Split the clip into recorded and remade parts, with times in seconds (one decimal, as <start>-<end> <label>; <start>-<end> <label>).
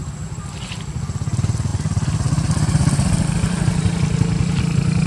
0.0-0.5 remade; 0.5-1.7 recorded; 1.7-5.1 remade